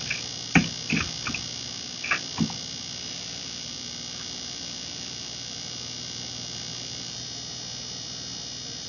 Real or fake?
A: real